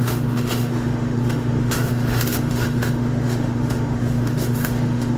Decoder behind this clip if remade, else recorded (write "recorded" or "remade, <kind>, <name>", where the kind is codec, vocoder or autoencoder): remade, autoencoder, DAC-VAE